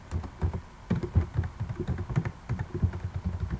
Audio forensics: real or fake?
real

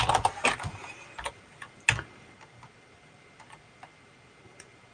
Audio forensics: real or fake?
real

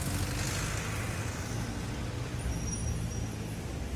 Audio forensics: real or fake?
real